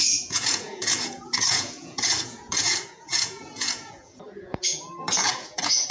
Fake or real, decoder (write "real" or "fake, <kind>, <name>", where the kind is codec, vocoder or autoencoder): fake, vocoder, Vocos